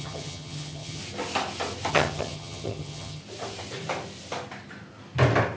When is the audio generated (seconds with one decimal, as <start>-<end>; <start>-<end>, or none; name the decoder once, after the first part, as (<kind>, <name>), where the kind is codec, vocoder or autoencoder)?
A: 0.0-1.0 (vocoder, HiFi-GAN); 1.9-3.2